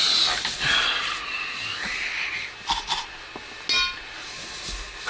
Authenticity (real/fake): real